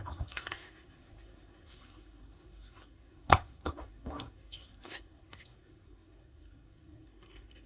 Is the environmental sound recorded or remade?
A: remade